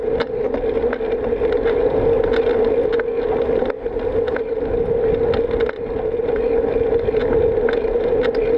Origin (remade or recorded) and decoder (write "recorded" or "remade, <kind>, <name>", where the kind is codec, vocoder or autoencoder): recorded